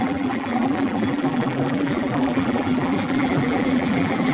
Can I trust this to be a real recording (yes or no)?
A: no